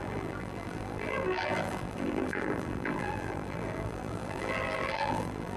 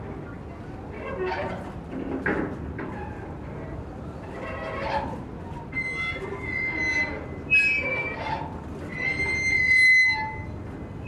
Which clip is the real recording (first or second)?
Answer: second